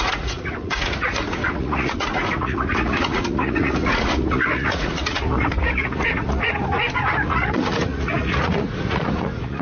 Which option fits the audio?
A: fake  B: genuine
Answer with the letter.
A